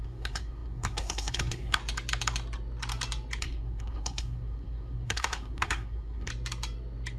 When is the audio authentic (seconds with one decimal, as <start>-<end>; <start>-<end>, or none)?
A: 1.8-3.4; 6.3-7.2